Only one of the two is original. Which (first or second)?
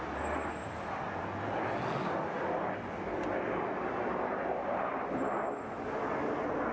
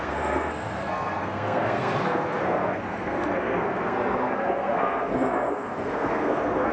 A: first